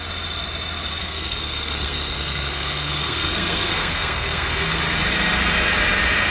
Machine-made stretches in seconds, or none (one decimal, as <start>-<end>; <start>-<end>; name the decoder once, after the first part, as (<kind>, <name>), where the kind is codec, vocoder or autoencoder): 1.0-4.8 (codec, SNAC)